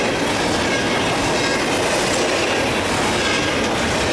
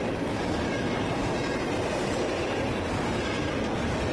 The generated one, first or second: second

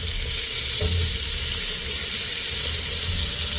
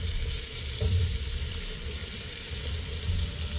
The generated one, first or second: second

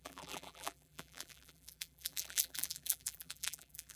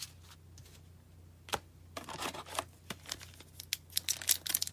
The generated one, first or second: first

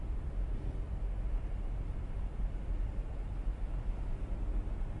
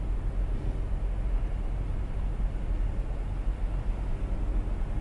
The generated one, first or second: first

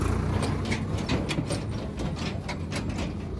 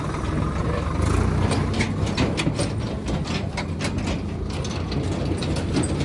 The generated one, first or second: second